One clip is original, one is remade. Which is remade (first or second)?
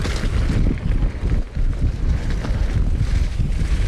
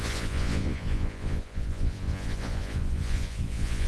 second